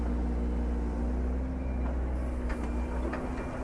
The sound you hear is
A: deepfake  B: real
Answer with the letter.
B